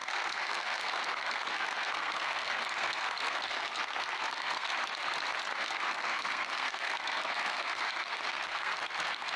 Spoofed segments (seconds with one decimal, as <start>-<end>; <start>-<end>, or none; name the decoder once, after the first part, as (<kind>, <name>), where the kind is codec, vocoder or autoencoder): 0.0-4.7 (codec, SNAC); 5.6-9.4